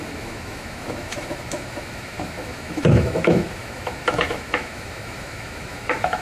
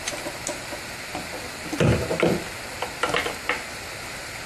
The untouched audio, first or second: second